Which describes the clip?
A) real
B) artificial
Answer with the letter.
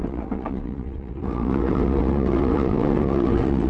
B